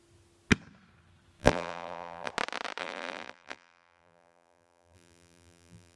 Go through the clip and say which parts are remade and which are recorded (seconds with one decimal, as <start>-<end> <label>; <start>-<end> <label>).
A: 0.0-1.4 recorded; 1.4-2.3 remade; 2.3-2.8 recorded; 2.8-6.0 remade